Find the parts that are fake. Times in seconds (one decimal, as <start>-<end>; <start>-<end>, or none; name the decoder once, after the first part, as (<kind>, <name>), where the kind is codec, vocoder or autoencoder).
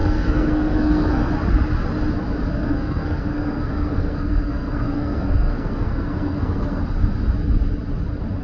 0.0-1.3 (codec, SNAC); 2.5-6.8